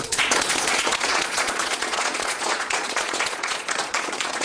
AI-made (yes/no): yes